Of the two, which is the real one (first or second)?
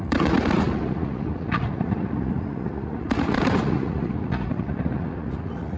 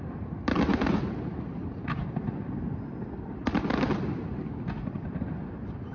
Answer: second